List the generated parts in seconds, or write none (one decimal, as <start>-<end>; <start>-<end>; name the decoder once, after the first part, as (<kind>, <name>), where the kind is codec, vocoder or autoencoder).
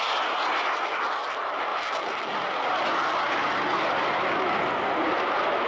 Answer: none